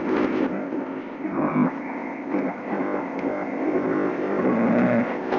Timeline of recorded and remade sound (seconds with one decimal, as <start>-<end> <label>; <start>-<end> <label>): 0.0-5.4 remade